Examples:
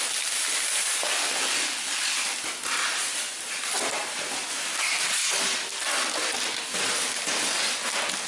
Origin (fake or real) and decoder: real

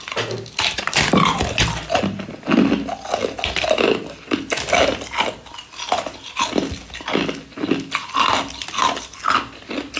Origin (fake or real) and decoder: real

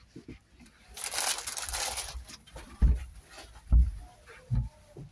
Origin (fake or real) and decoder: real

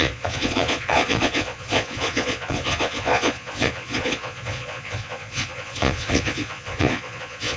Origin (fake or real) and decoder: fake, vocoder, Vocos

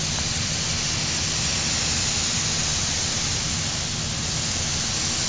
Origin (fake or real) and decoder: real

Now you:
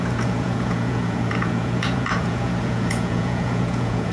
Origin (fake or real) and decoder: fake, vocoder, Vocos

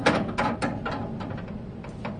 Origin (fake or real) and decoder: real